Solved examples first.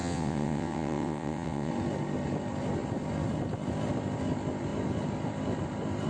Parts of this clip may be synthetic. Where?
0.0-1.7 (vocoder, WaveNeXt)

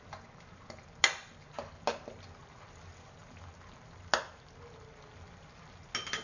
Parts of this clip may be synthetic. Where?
none

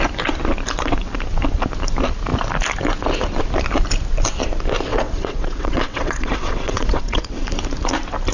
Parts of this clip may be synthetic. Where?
4.9-7.5 (vocoder, WaveNeXt)

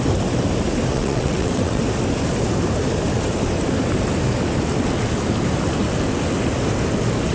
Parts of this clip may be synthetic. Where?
0.9-1.8 (vocoder, WaveNeXt)

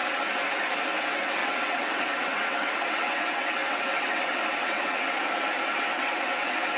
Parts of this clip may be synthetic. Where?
1.0-5.0 (vocoder, WaveNeXt); 5.7-6.8

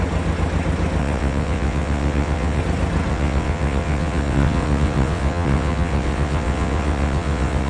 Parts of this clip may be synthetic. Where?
1.0-2.6 (vocoder, WaveNeXt); 3.1-7.7

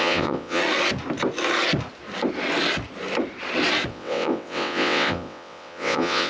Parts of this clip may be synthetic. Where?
0.0-0.6 (vocoder, WaveNeXt); 3.9-6.3

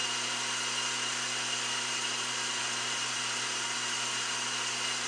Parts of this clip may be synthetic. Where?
none